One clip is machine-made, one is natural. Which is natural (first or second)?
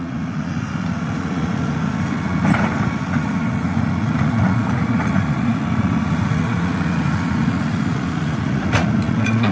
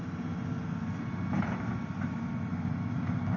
second